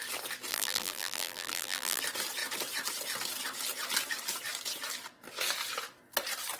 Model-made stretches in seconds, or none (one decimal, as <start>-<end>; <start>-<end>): 0.5-2.0